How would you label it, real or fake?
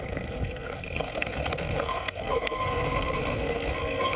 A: fake